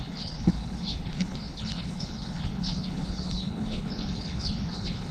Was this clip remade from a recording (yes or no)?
yes